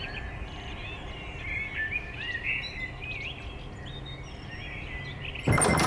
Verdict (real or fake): real